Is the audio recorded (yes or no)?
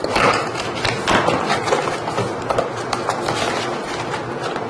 yes